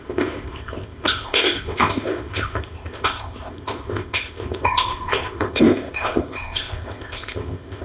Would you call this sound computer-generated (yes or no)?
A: yes